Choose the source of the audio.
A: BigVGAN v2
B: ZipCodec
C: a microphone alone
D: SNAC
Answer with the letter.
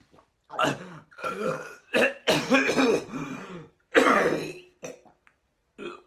C